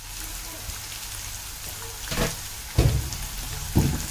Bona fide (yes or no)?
yes